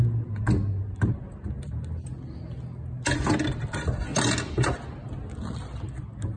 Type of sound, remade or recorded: recorded